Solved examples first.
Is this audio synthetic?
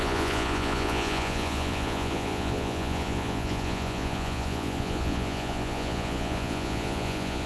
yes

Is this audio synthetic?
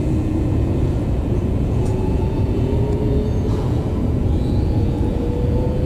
yes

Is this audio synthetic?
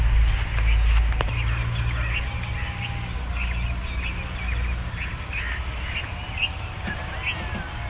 no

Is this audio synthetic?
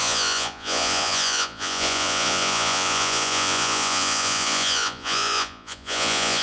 yes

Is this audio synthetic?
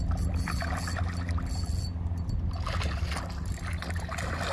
no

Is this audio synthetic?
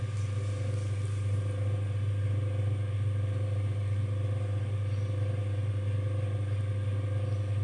no